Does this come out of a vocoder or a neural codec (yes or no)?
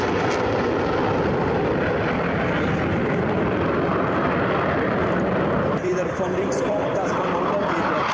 yes